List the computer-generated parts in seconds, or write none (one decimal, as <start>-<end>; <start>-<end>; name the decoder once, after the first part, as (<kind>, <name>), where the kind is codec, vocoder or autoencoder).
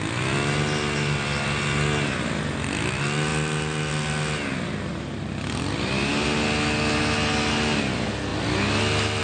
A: none